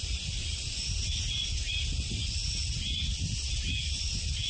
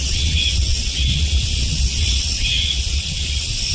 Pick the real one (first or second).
first